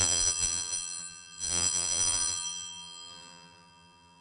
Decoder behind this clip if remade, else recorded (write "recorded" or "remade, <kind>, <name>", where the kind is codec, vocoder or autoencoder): remade, vocoder, BigVGAN v2